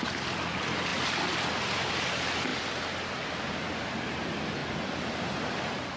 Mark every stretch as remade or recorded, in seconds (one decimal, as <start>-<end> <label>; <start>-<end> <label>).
0.0-2.5 remade; 2.5-3.3 recorded; 3.3-4.6 remade; 4.6-5.2 recorded; 5.2-6.0 remade